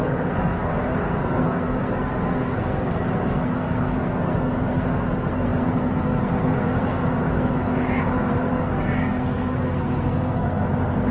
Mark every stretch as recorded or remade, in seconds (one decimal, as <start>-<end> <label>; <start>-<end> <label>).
0.0-11.1 remade

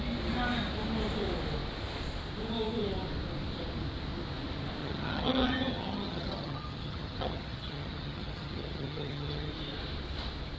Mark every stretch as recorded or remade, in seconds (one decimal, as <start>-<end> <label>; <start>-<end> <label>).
0.0-4.8 recorded; 4.8-9.5 remade; 9.5-10.6 recorded

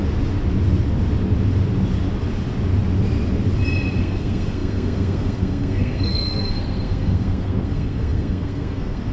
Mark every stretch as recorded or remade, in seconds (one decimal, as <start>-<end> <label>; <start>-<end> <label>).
0.0-4.0 recorded; 4.0-9.1 remade

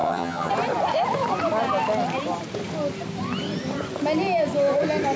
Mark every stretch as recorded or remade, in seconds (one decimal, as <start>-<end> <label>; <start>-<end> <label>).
0.0-0.5 remade; 0.5-5.2 recorded